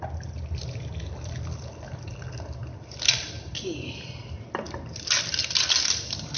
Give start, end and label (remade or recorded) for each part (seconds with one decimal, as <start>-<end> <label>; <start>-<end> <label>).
0.0-6.4 recorded